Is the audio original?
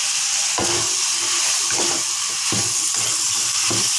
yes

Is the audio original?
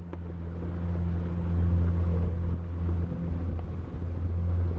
yes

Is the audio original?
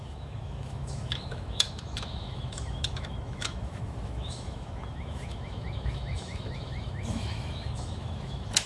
no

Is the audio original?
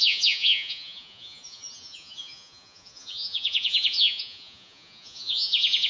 no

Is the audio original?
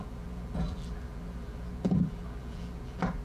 no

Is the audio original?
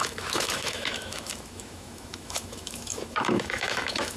no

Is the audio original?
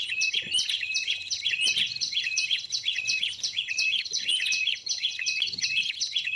no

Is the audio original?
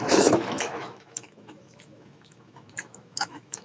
no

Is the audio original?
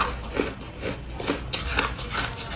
yes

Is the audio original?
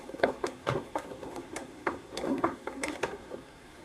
no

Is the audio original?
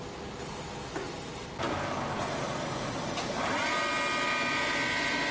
yes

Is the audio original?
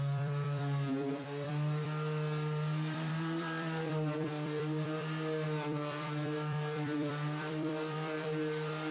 no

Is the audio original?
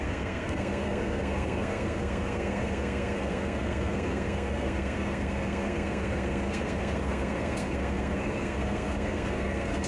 no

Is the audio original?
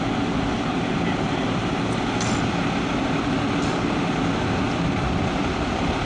yes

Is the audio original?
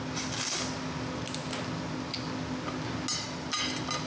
yes